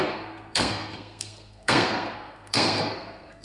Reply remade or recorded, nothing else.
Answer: remade